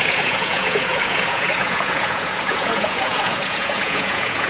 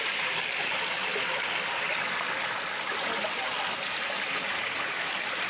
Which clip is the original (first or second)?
second